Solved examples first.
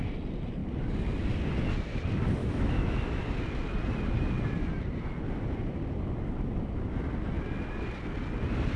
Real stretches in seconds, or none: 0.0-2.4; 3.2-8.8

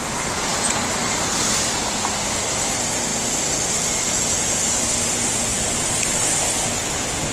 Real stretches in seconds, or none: 0.0-7.3

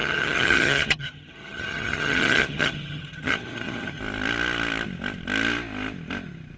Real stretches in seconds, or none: 4.0-6.6

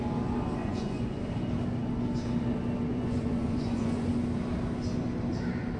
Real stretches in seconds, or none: 0.0-0.6; 1.2-2.9; 4.1-5.8

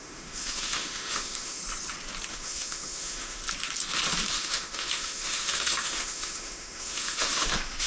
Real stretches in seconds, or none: 1.6-2.3; 3.4-4.3